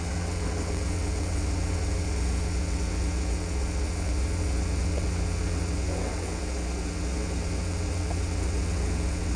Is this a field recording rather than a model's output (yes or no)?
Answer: no